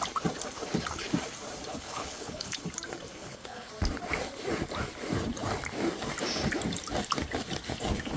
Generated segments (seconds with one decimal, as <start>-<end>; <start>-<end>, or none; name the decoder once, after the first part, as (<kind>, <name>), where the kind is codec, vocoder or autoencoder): 1.7-2.6 (codec, HILCodec); 3.2-3.7